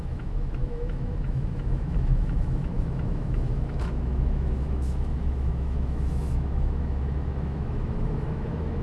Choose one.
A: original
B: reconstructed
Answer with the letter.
B